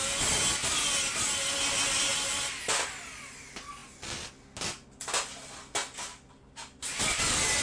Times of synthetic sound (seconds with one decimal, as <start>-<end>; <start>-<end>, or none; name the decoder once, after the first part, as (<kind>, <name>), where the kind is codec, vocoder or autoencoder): none